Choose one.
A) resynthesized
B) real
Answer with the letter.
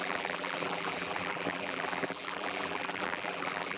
A